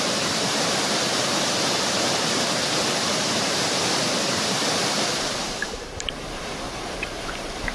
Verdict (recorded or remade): remade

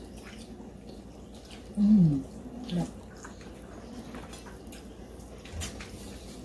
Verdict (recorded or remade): recorded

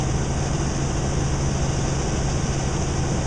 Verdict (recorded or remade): recorded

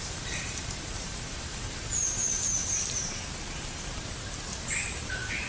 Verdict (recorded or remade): remade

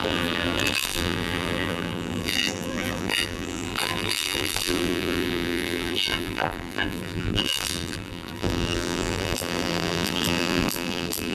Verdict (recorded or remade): remade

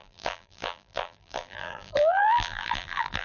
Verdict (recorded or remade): remade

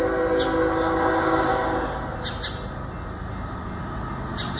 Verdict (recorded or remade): recorded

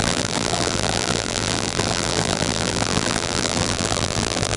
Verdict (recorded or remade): remade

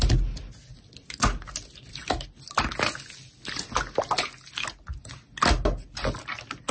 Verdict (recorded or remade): recorded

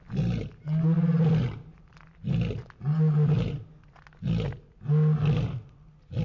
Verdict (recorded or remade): recorded